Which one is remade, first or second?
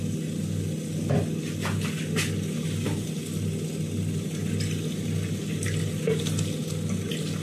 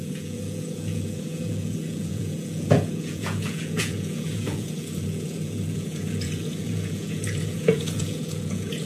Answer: second